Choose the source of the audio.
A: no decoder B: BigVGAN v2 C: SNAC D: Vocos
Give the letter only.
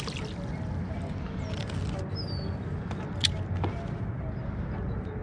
A